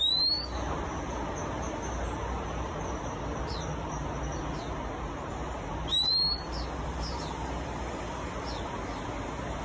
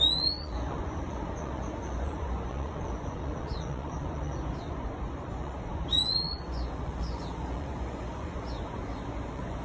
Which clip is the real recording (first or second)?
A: first